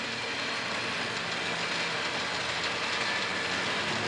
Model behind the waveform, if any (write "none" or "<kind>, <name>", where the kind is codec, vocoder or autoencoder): none